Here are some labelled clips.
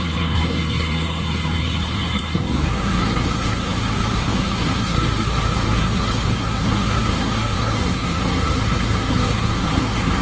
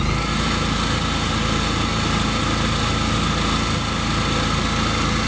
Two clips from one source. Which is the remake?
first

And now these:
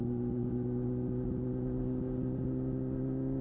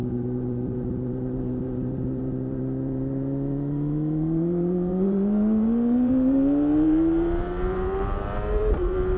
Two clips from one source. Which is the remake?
second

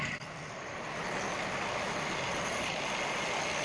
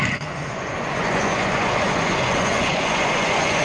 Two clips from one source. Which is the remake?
second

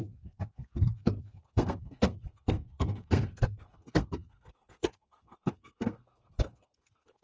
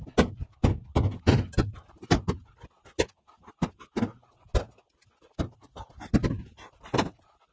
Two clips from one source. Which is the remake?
first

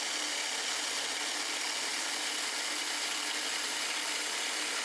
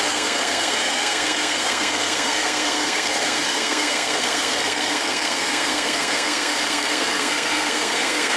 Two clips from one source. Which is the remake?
second